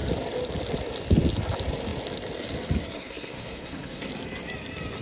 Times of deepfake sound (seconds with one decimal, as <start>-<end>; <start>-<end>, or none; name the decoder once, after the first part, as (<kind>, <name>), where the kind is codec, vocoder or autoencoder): 2.8-4.1 (codec, SNAC)